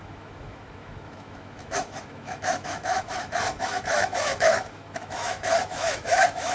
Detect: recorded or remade remade